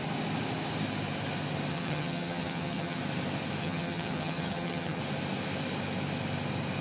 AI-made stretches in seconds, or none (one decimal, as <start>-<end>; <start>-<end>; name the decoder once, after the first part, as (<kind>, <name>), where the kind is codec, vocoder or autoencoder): 1.7-3.0 (vocoder, HiFi-GAN); 3.6-5.0